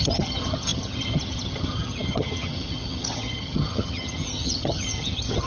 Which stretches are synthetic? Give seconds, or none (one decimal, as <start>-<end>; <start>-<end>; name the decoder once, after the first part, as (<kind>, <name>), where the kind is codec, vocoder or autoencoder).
0.0-5.5 (vocoder, HiFi-GAN)